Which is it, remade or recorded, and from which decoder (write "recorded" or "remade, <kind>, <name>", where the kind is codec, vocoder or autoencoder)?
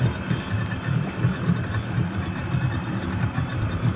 recorded